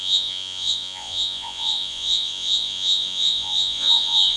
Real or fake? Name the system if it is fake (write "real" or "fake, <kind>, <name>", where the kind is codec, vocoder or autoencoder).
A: fake, vocoder, Vocos